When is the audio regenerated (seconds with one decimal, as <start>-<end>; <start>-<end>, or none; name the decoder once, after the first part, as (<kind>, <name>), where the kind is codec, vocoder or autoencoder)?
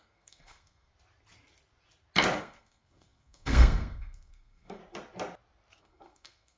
0.0-0.9 (codec, SNAC); 2.4-4.8; 5.8-6.6